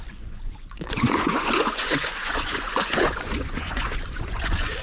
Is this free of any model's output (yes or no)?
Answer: no